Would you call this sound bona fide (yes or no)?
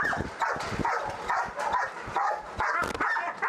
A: yes